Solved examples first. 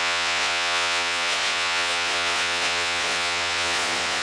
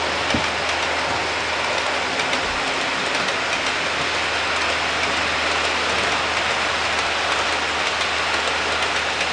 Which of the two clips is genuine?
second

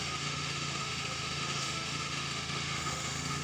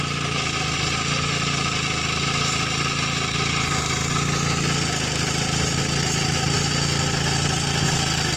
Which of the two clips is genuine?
second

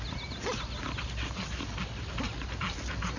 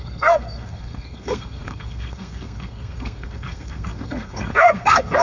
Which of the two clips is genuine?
first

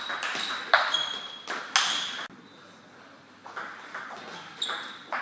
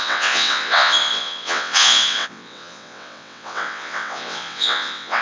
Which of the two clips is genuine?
first